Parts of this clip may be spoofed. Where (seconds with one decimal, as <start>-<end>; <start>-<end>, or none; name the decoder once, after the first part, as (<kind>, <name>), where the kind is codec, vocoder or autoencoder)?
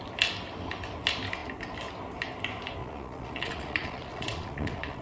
2.8-5.0 (vocoder, Vocos)